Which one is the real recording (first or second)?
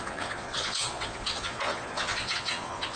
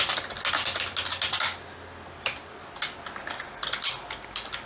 second